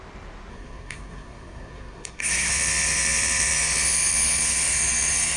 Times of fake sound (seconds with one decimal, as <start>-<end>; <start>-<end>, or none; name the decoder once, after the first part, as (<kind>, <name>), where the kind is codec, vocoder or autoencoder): 0.5-2.5 (codec, SNAC)